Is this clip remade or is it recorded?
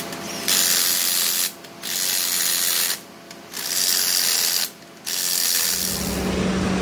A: recorded